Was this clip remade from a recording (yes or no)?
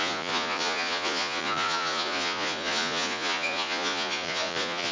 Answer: yes